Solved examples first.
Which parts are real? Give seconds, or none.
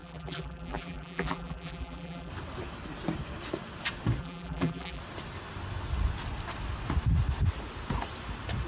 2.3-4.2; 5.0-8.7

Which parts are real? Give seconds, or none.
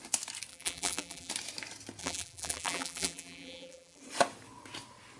0.0-0.5; 1.3-2.0; 4.0-5.2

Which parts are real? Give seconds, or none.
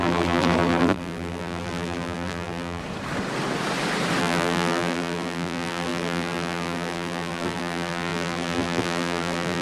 2.8-4.2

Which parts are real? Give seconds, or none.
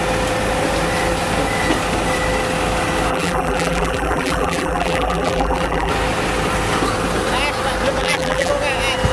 0.0-3.1; 5.9-8.0; 8.5-9.1